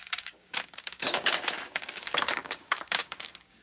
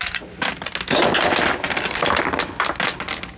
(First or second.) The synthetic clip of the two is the first